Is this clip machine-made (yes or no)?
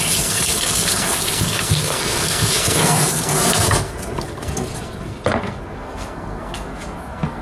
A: yes